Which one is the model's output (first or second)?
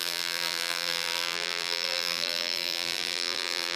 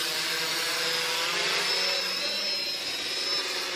first